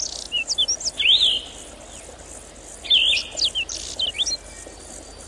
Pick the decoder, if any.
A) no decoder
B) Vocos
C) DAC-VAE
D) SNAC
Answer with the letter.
A